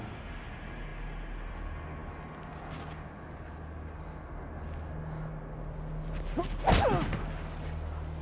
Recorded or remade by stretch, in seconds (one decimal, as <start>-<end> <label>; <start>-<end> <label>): 0.0-8.2 recorded